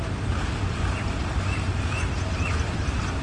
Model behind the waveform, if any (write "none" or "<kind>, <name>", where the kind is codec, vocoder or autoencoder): none